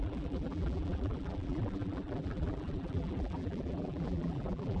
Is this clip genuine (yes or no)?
no